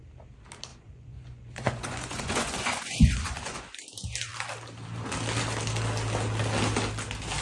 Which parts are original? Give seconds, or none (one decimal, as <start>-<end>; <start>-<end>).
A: 0.0-0.7; 3.6-7.4